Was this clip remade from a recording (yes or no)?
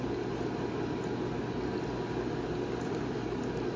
no